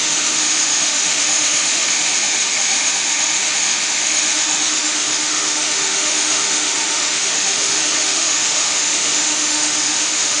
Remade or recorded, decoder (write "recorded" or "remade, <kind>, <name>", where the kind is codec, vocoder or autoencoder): remade, autoencoder, DAC-VAE